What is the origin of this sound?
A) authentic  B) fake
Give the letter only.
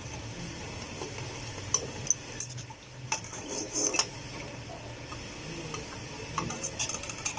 A